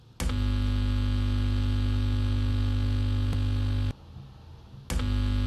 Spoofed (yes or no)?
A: no